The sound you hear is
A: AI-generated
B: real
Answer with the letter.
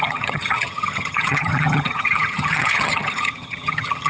A